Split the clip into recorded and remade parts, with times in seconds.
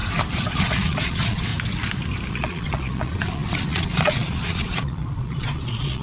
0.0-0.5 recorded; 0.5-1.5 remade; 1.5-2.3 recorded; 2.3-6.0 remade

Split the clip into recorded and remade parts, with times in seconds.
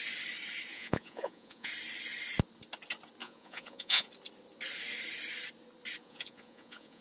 0.0-0.7 recorded; 0.7-1.7 remade; 1.7-3.2 recorded; 3.2-4.1 remade; 4.1-6.0 recorded; 6.0-7.0 remade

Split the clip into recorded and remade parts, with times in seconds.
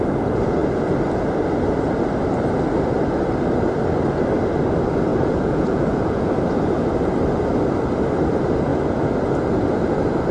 0.0-5.1 recorded; 5.1-6.3 remade; 6.3-10.3 recorded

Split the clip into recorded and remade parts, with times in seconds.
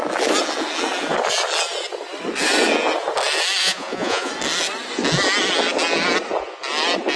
0.0-3.6 recorded; 3.6-4.3 remade; 4.3-7.2 recorded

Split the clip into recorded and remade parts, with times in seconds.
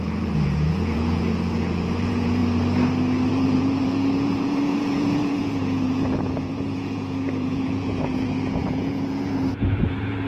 0.0-2.4 remade; 2.4-3.3 recorded; 3.3-10.3 remade